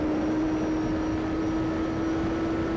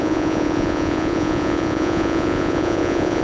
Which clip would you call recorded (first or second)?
first